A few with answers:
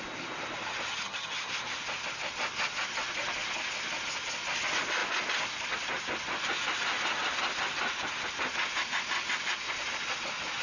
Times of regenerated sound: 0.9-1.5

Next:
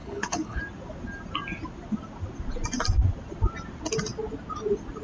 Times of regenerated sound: 0.0-0.6

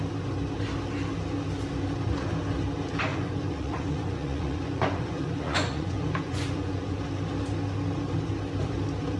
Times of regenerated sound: 3.1-7.0

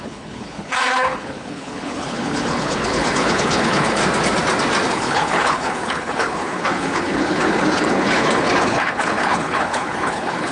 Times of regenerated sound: 0.0-4.0; 4.9-10.5

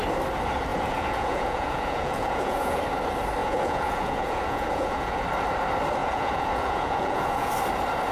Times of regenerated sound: 0.7-2.8; 3.4-5.2; 6.0-7.5

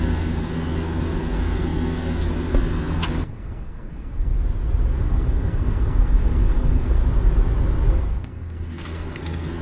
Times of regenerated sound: 0.0-4.3; 4.9-7.0; 7.9-9.6

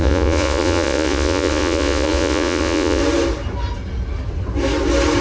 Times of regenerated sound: 0.0-3.0

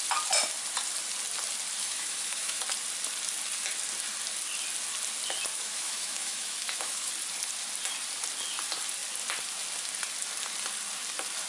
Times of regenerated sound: 1.8-2.6; 5.5-7.1